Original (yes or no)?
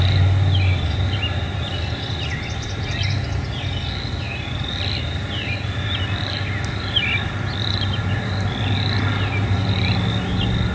yes